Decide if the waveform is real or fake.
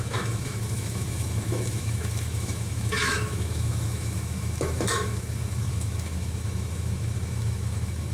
fake